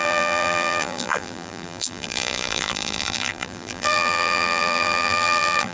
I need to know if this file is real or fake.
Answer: fake